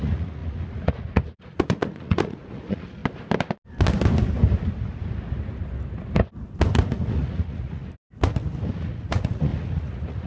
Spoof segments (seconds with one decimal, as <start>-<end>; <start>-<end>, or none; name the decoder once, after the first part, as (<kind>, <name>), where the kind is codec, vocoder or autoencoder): 0.0-3.0 (vocoder, Vocos); 7.0-7.8; 8.7-10.3